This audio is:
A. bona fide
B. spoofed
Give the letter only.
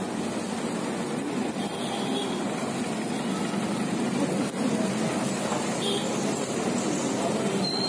A